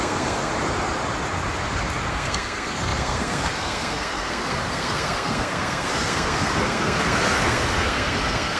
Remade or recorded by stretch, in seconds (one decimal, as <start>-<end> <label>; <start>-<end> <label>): 0.0-0.5 remade; 0.5-2.1 recorded; 2.1-8.6 remade